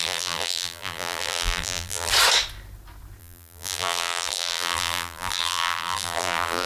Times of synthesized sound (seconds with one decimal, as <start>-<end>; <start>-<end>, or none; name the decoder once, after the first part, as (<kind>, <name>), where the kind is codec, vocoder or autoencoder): 0.0-2.1 (vocoder, BigVGAN v2); 3.2-6.7